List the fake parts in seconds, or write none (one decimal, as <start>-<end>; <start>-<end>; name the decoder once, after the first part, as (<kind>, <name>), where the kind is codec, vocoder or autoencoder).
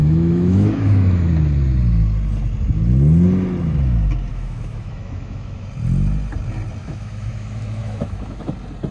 0.0-1.3 (autoencoder, DAC-VAE); 4.3-5.6; 6.8-8.5